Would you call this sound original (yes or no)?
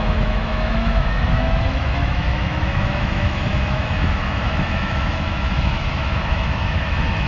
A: no